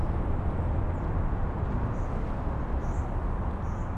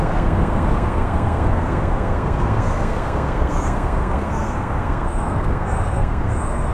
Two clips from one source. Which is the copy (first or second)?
second